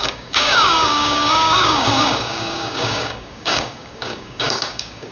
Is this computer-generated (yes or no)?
yes